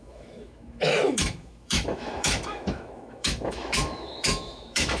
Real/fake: fake